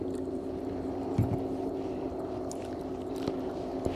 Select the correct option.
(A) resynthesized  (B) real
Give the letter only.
A